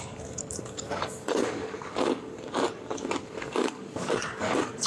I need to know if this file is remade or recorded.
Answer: remade